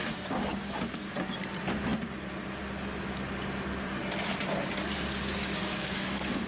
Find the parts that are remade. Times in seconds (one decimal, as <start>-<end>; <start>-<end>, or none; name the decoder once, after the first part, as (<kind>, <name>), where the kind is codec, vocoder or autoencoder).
0.0-1.1 (codec, DAC); 5.4-6.5